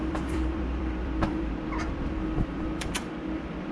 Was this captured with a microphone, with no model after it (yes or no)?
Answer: no